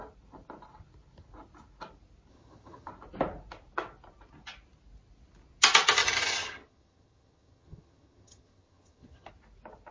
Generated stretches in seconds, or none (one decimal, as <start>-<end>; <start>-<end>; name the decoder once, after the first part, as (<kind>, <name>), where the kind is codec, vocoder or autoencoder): 2.3-2.9 (vocoder, HiFi-GAN); 6.0-9.3